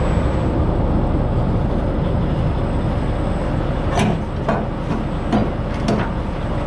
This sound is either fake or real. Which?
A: real